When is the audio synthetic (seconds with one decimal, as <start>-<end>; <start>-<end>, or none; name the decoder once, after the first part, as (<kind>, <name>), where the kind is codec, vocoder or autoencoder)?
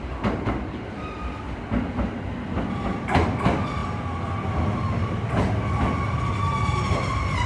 none